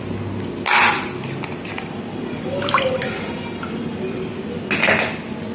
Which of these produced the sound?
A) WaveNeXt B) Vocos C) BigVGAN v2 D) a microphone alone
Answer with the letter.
D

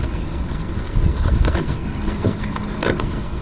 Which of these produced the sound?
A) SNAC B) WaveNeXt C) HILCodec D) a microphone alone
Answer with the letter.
A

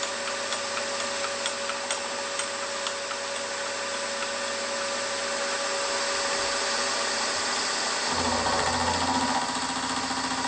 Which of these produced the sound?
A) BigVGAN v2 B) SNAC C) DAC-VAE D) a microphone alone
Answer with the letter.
D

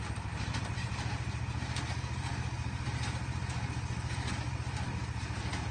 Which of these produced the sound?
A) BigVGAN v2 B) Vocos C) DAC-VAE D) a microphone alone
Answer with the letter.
D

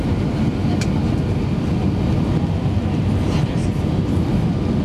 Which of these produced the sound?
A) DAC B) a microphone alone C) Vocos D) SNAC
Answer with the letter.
B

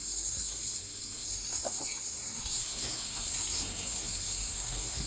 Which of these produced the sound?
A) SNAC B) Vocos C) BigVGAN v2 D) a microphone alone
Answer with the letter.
A